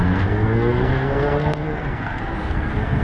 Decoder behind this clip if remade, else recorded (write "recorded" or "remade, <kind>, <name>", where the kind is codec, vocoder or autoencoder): remade, codec, SNAC